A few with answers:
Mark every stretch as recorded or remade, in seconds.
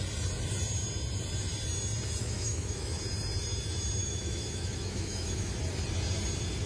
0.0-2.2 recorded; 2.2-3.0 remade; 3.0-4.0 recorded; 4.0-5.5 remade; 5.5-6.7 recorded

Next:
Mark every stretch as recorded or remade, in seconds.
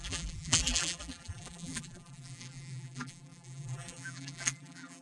0.0-5.0 remade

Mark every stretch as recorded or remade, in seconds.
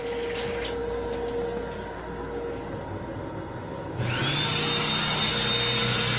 0.0-6.2 recorded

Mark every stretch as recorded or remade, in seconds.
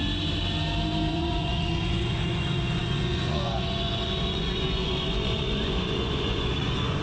0.0-1.1 recorded; 1.1-7.0 remade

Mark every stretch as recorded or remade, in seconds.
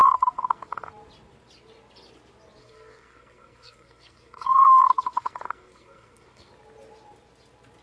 0.0-0.9 remade; 0.9-2.6 recorded; 2.6-6.5 remade; 6.5-7.8 recorded